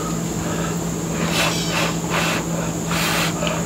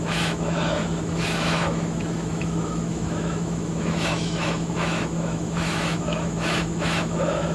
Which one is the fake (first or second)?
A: second